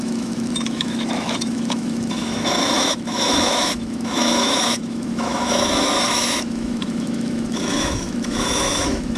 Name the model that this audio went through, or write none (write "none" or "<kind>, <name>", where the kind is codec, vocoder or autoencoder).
autoencoder, DAC-VAE